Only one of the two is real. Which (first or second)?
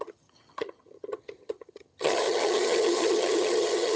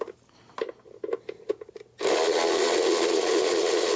second